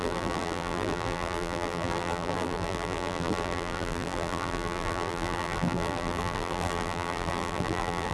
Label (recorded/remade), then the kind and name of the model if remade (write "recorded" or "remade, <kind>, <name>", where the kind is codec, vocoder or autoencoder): remade, vocoder, BigVGAN v2